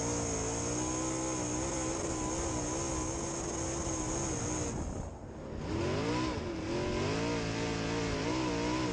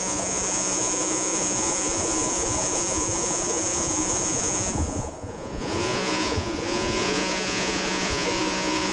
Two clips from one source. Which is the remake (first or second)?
second